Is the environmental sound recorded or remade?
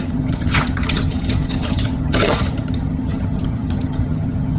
remade